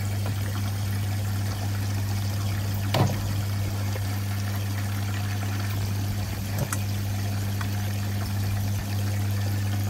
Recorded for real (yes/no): yes